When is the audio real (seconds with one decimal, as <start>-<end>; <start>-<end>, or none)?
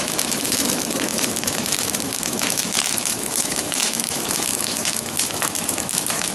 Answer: none